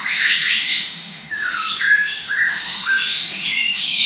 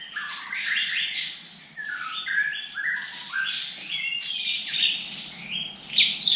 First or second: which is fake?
first